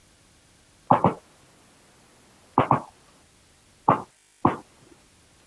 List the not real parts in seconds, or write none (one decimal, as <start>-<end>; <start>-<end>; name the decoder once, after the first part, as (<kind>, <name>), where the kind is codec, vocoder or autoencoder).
none